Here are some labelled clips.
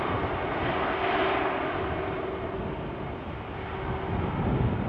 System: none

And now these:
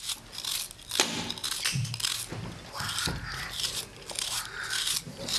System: none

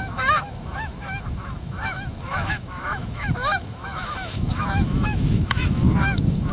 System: autoencoder, DAC-VAE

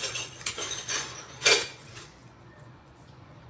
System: vocoder, Vocos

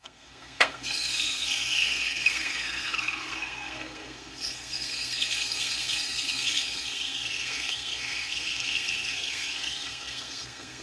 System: codec, SNAC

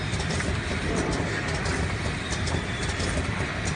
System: vocoder, BigVGAN v2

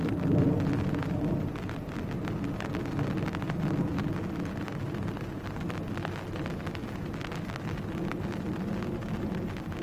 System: none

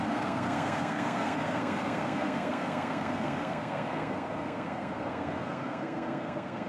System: codec, SNAC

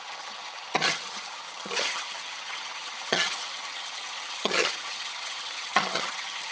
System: vocoder, HiFi-GAN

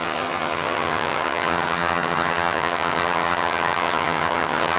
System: vocoder, HiFi-GAN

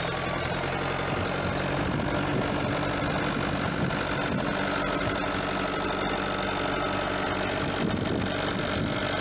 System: none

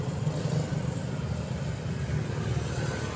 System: none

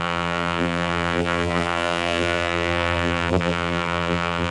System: vocoder, BigVGAN v2